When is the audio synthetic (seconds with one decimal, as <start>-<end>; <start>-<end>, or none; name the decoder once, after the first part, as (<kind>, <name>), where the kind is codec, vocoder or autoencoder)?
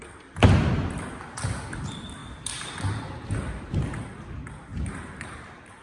2.2-3.8 (vocoder, BigVGAN v2); 4.7-5.8